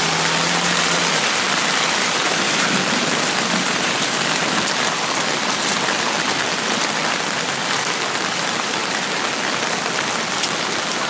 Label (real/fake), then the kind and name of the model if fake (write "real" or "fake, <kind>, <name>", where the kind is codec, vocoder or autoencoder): real